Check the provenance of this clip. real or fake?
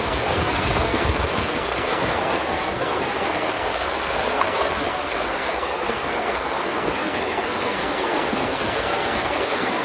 fake